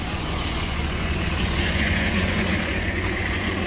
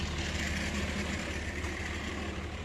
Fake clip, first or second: first